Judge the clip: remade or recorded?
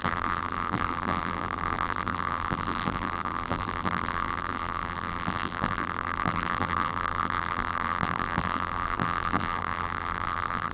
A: remade